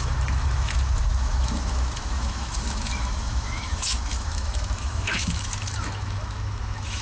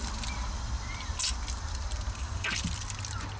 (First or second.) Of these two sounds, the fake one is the first